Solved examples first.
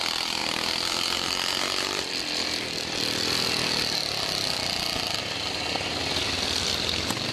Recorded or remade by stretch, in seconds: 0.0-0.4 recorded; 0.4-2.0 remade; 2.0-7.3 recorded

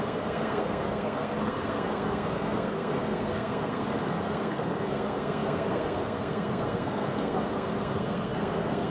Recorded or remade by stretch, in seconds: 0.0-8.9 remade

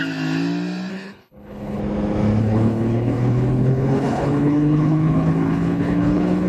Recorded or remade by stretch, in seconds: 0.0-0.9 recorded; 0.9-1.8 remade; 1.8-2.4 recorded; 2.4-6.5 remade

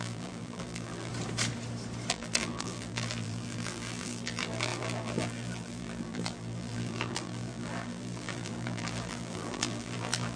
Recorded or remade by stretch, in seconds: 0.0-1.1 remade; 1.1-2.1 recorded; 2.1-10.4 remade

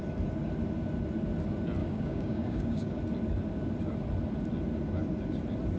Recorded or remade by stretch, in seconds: 0.0-1.8 recorded; 1.8-3.0 remade; 3.0-5.8 recorded

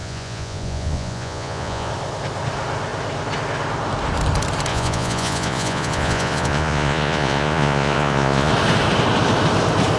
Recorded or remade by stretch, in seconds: 0.0-1.9 remade; 1.9-4.7 recorded; 4.7-8.5 remade; 8.5-10.0 recorded